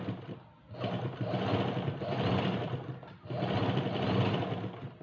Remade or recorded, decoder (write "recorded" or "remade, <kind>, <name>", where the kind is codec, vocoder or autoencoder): recorded